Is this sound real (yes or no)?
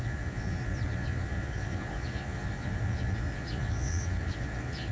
no